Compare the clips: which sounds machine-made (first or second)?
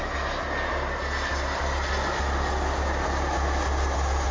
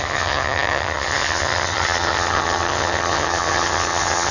second